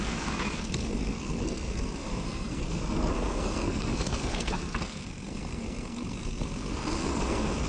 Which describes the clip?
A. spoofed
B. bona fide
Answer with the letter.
A